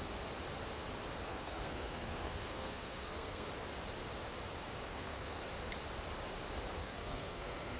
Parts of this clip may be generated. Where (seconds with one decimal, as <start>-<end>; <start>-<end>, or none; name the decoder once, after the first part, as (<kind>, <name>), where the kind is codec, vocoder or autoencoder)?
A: 1.3-3.5 (codec, SNAC); 4.9-5.5; 6.8-7.8